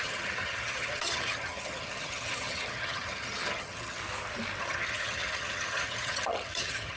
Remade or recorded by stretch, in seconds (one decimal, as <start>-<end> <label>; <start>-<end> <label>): 0.0-4.0 remade; 4.0-4.6 recorded; 4.6-7.0 remade